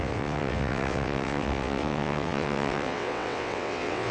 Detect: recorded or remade remade